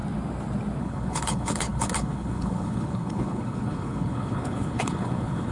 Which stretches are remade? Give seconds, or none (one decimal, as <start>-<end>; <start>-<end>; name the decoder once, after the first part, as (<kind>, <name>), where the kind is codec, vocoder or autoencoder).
0.8-5.5 (codec, HILCodec)